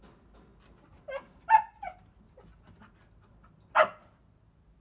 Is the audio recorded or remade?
recorded